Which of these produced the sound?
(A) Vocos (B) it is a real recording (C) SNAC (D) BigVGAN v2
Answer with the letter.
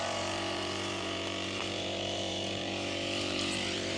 D